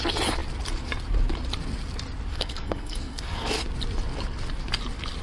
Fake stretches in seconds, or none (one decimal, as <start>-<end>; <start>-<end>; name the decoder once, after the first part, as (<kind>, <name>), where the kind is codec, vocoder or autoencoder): 2.3-3.6 (codec, SNAC)